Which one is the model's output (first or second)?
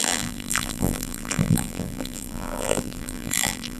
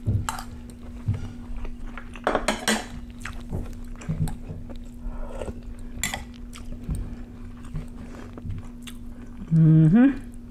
first